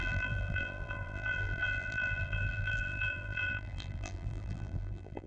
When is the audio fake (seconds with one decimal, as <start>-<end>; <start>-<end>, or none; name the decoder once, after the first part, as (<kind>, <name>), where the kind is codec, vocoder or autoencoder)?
0.0-5.3 (vocoder, BigVGAN v2)